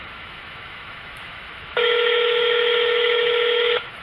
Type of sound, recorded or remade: remade